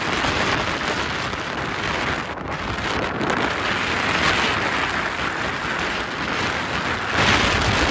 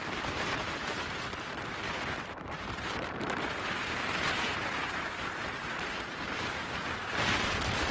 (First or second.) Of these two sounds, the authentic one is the first